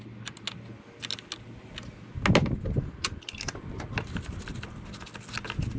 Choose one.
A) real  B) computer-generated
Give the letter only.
A